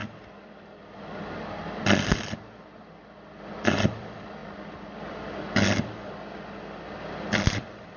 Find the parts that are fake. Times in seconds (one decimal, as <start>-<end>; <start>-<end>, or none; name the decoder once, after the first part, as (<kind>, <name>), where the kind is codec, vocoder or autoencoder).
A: 3.4-4.4 (vocoder, BigVGAN v2); 7.1-8.0